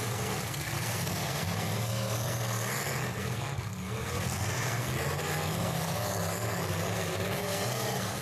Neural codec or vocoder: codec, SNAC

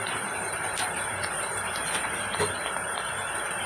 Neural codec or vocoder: none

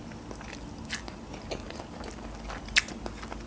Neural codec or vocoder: none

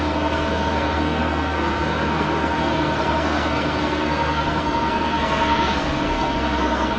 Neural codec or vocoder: codec, SNAC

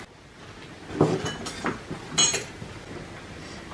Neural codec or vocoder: none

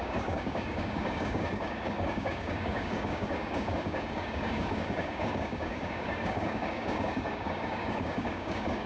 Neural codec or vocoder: codec, DAC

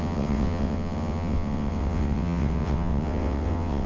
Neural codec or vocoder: vocoder, WaveNeXt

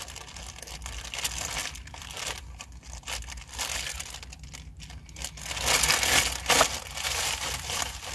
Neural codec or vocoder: none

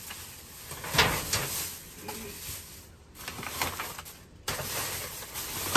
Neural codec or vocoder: none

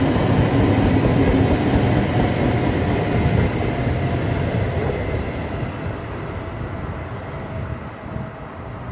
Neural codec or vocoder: none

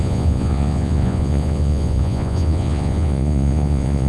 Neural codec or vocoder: vocoder, Vocos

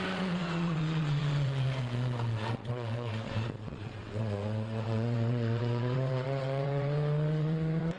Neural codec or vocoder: vocoder, WaveNeXt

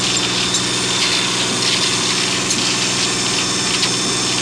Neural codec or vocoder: none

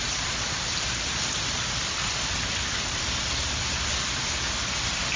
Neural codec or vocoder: vocoder, BigVGAN v2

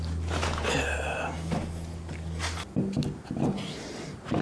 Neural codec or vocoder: none